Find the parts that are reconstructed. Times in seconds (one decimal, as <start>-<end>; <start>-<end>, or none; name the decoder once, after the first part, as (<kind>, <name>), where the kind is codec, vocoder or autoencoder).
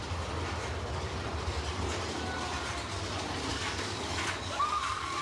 3.5-5.2 (codec, DAC)